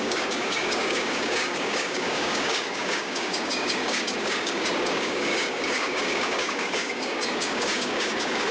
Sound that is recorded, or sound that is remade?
remade